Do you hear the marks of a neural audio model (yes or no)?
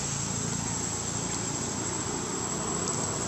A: no